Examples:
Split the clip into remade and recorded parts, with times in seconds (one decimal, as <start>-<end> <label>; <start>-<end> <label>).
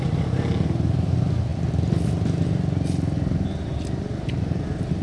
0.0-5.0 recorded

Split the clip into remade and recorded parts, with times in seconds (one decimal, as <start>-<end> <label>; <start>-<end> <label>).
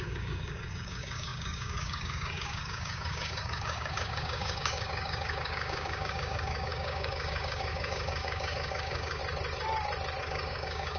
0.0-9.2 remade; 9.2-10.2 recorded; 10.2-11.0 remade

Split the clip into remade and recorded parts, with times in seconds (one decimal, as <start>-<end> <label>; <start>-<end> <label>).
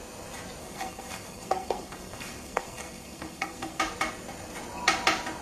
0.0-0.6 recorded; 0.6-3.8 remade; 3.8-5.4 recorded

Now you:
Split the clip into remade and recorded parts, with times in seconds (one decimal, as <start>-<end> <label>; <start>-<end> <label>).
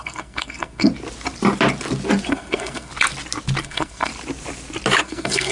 0.0-0.9 remade; 0.9-2.3 recorded; 2.3-2.9 remade; 2.9-3.6 recorded; 3.6-4.1 remade; 4.1-5.0 recorded; 5.0-5.5 remade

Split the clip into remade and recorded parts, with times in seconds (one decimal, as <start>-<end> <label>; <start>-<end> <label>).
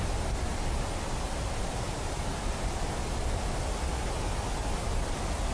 0.0-5.5 recorded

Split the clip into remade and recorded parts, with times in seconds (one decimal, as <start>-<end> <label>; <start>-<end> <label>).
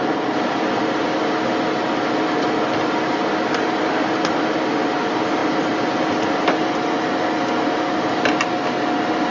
0.0-9.3 recorded